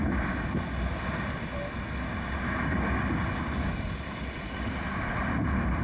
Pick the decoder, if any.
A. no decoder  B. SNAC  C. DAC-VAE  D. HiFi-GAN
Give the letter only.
A